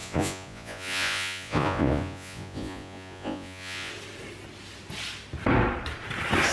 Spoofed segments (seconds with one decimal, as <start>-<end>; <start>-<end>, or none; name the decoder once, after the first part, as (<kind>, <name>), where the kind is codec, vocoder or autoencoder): 0.0-3.9 (vocoder, Vocos)